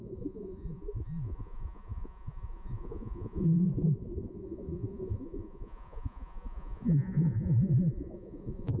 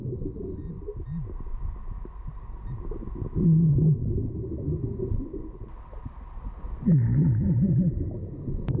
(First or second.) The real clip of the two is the second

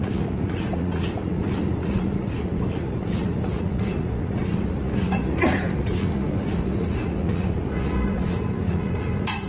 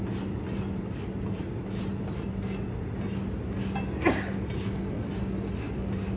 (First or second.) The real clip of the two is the second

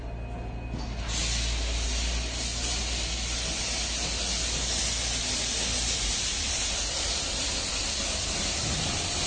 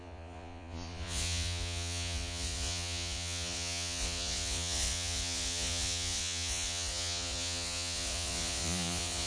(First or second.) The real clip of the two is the first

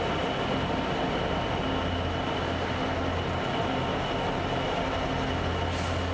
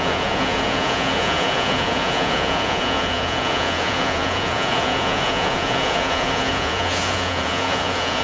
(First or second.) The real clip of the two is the first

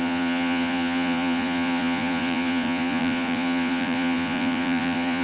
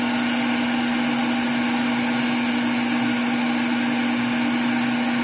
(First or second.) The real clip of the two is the second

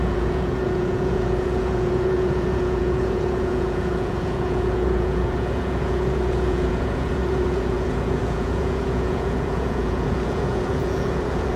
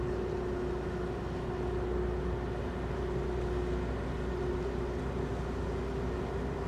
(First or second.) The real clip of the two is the second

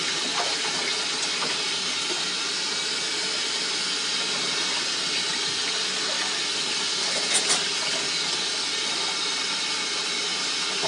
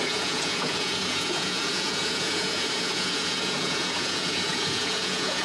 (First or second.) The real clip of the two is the first